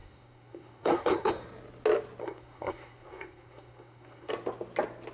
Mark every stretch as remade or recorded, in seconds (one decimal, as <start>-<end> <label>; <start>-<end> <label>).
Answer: 0.0-1.3 remade; 1.3-2.2 recorded; 2.2-4.3 remade; 4.3-5.1 recorded